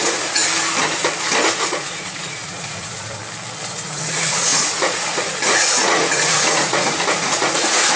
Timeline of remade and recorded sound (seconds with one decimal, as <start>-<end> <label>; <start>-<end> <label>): 0.0-0.4 remade; 0.4-1.4 recorded; 1.4-3.2 remade; 3.2-3.7 recorded; 3.7-8.0 remade